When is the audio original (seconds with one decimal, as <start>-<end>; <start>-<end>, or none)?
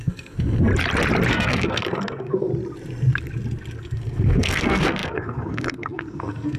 0.7-1.3; 2.5-3.8